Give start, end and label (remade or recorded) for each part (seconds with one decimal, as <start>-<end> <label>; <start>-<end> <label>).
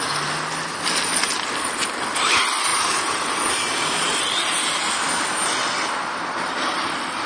0.0-2.7 recorded; 2.7-4.9 remade; 4.9-7.3 recorded